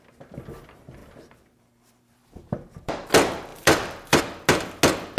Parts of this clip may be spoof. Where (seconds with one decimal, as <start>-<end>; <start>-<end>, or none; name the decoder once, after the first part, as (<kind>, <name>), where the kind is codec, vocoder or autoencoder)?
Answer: 1.0-3.1 (vocoder, BigVGAN v2); 3.5-4.2